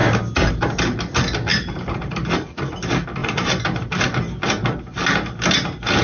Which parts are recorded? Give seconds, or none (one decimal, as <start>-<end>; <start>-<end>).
0.0-1.5; 2.7-3.2; 4.0-6.0